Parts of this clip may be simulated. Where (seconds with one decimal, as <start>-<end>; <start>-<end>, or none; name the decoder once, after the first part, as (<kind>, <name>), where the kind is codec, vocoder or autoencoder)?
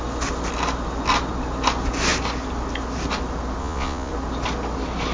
3.6-4.1 (vocoder, Vocos)